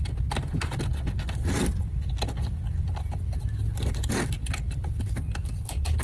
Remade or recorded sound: recorded